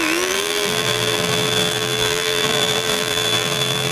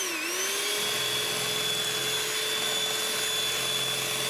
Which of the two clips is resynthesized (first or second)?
first